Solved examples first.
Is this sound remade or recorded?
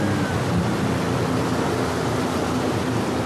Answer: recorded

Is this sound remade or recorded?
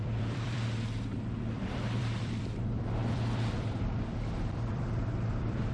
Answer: remade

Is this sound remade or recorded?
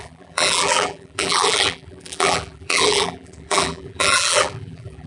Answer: remade